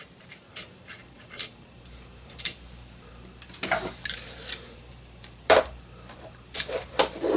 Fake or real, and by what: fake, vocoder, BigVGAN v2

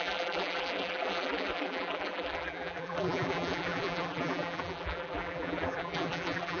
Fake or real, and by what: fake, vocoder, BigVGAN v2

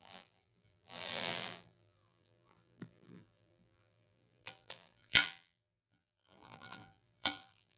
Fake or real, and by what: fake, vocoder, BigVGAN v2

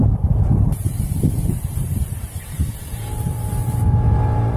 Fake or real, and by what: fake, vocoder, BigVGAN v2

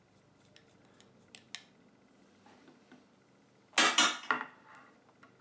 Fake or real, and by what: real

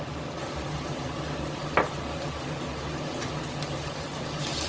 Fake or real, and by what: real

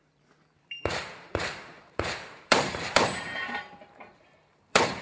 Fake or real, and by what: fake, vocoder, BigVGAN v2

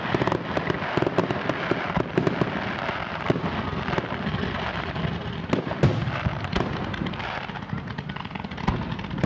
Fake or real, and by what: real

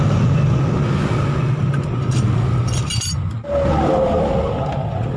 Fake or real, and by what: real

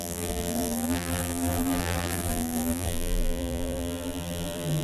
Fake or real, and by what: fake, vocoder, BigVGAN v2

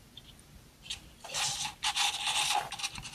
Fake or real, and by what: real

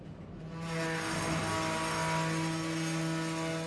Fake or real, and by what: real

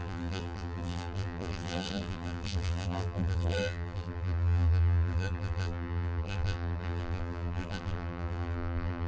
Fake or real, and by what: fake, vocoder, BigVGAN v2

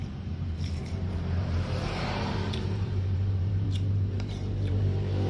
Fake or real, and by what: fake, vocoder, BigVGAN v2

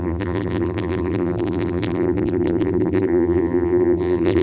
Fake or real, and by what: fake, vocoder, BigVGAN v2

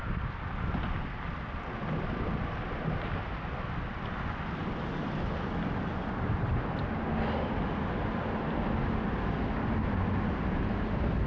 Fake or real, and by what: real